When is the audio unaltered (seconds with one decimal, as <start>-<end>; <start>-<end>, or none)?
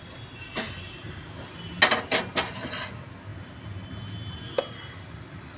0.0-5.6